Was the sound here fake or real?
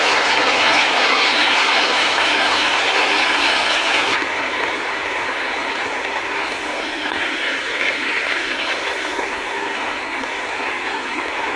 fake